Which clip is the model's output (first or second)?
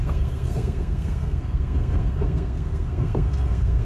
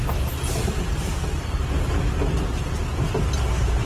first